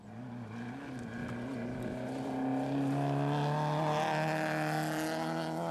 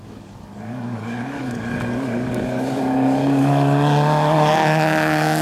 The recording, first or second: first